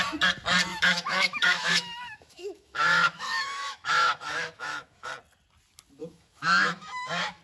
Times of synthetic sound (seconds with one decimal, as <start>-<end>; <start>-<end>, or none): 0.7-5.1; 6.0-7.4